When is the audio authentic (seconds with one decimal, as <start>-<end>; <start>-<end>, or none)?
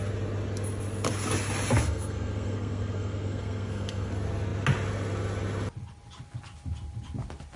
0.0-1.8; 4.1-7.6